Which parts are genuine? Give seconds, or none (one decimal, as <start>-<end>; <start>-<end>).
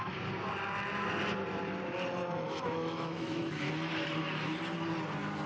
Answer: 0.0-2.2; 3.7-5.5